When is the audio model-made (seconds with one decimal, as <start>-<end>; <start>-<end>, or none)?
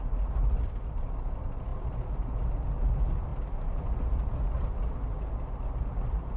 none